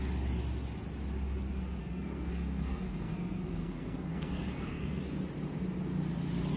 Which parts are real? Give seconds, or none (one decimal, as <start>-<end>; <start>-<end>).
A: 0.0-1.8; 5.0-6.6